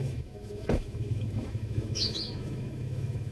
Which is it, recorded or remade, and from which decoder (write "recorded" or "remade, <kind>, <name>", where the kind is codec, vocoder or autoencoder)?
remade, autoencoder, DAC-VAE